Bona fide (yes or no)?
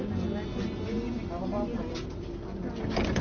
yes